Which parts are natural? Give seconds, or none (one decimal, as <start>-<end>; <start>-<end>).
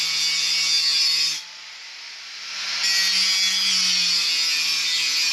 0.0-5.3